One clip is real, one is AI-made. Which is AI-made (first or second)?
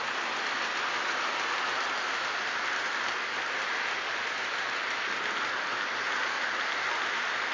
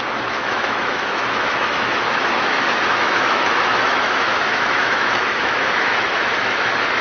second